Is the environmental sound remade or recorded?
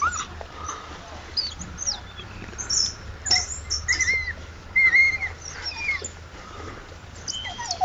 recorded